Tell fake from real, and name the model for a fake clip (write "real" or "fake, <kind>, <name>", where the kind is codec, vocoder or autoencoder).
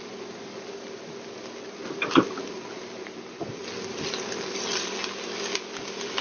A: real